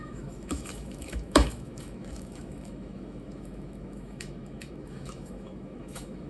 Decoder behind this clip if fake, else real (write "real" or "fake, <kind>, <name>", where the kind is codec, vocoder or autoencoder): fake, autoencoder, DAC-VAE